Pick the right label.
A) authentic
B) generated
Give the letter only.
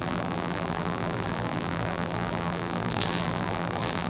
B